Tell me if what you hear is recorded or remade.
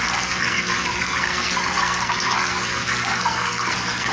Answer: remade